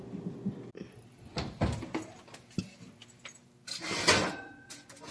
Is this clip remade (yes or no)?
no